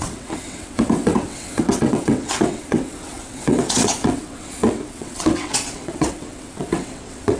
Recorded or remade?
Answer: remade